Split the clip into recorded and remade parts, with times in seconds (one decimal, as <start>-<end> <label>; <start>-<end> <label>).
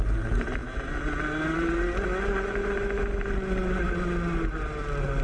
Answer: 0.0-5.2 recorded